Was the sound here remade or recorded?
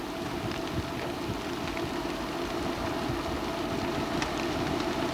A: recorded